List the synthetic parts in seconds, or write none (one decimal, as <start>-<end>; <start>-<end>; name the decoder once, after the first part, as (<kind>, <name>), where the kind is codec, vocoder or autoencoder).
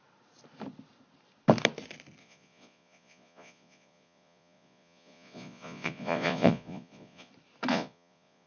2.2-7.3 (vocoder, Vocos); 7.7-8.5